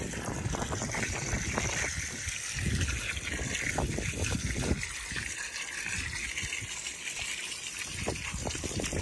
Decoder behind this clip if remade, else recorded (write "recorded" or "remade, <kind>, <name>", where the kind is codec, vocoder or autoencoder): recorded